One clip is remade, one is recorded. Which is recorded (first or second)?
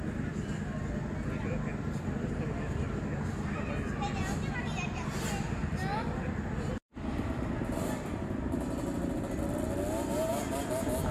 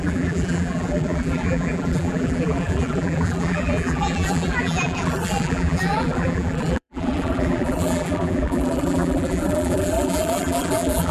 first